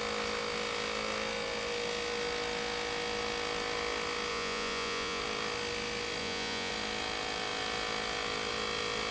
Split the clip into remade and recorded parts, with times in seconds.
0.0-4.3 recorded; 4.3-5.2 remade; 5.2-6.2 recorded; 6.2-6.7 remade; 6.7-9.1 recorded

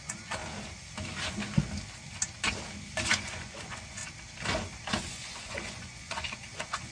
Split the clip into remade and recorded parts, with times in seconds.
0.0-0.4 remade; 0.4-3.1 recorded; 3.1-4.0 remade; 4.0-5.0 recorded; 5.0-6.9 remade

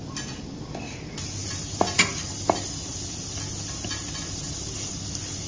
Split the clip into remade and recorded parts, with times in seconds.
0.0-5.5 recorded

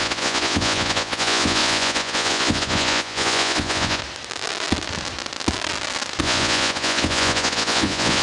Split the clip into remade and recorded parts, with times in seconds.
0.0-4.0 remade; 4.0-6.2 recorded; 6.2-8.2 remade

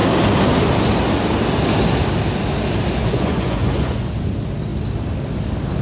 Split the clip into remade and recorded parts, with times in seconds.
0.0-3.0 recorded; 3.0-4.1 remade; 4.1-5.8 recorded

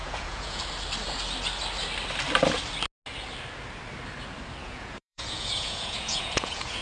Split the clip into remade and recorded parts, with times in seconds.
0.0-0.6 remade; 0.6-4.6 recorded; 4.6-6.8 remade